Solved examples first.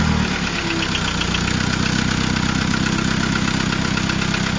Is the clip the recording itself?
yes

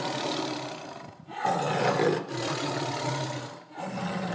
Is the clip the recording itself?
yes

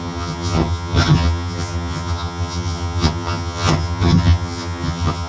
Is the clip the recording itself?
no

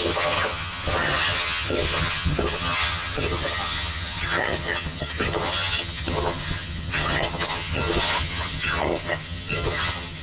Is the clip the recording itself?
no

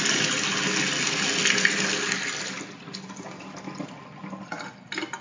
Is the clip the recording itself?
yes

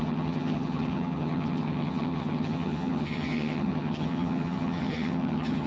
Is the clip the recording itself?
no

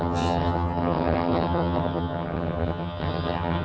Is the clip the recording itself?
no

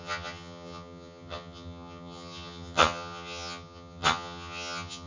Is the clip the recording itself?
no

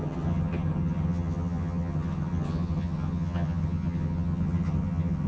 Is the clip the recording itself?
no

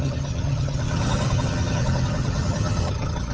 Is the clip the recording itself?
no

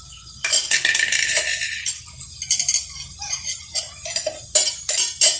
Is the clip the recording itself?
yes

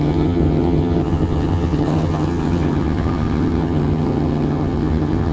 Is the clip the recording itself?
no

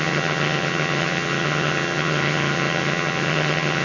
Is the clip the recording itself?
no